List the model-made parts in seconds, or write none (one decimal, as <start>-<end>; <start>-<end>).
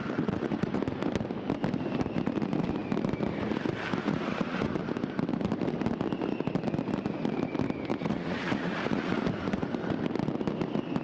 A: 0.0-0.8; 4.0-4.8; 7.9-9.2